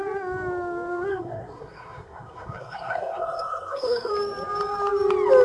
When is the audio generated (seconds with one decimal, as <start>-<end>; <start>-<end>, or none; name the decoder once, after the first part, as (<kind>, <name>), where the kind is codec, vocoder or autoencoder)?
1.1-4.1 (codec, SNAC)